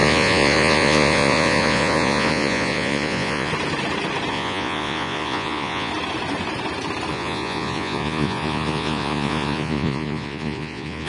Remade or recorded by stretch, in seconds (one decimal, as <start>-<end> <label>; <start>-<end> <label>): 0.0-3.5 remade; 3.5-4.3 recorded; 4.3-5.9 remade; 5.9-7.1 recorded; 7.1-11.1 remade